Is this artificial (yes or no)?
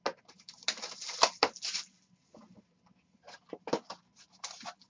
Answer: no